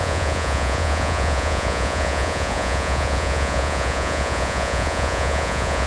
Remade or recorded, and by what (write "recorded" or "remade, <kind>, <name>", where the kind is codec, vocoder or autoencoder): remade, vocoder, Vocos